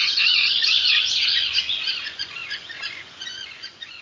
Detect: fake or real fake